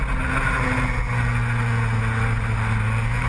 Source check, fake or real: real